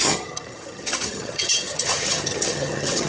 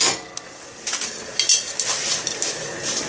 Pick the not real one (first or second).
first